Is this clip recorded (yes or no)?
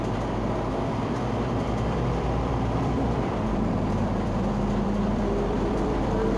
no